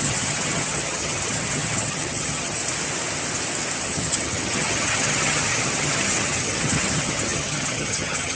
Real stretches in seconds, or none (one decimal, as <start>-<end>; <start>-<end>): 2.6-3.8